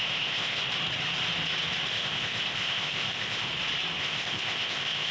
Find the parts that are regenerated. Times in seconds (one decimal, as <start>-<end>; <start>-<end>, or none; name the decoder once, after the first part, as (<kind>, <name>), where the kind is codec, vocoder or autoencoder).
0.0-0.6 (codec, ZipCodec); 1.9-3.5; 4.0-5.1